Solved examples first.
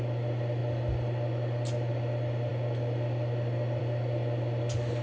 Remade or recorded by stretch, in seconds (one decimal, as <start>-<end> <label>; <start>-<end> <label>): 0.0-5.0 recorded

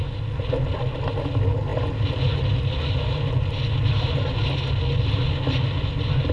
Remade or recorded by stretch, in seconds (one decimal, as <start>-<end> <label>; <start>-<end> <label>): 0.0-6.3 recorded

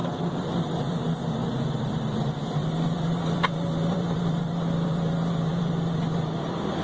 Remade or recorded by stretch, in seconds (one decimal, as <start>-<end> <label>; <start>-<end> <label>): 0.0-6.8 remade

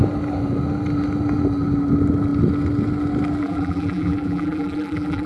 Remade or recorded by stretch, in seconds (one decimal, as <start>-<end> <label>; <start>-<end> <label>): 0.0-3.4 recorded; 3.4-5.3 remade

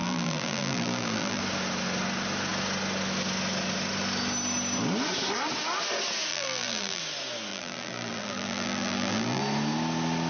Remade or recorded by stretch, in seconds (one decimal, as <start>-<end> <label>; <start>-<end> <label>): 0.0-1.4 remade; 1.4-6.3 recorded; 6.3-7.0 remade; 7.0-7.5 recorded; 7.5-9.4 remade; 9.4-10.3 recorded

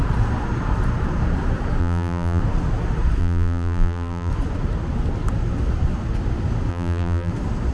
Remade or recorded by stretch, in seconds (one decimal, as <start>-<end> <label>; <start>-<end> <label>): 0.0-1.8 recorded; 1.8-2.4 remade; 2.4-3.2 recorded; 3.2-4.3 remade; 4.3-6.7 recorded; 6.7-7.3 remade; 7.3-7.7 recorded

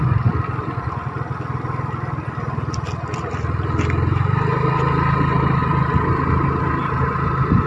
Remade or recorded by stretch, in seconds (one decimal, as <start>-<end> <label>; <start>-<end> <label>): 0.0-7.7 recorded

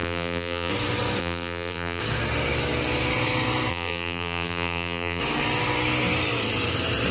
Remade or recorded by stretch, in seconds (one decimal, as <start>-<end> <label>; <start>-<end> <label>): 0.0-0.7 remade; 0.7-1.2 recorded; 1.2-2.0 remade; 2.0-3.7 recorded; 3.7-5.2 remade; 5.2-7.1 recorded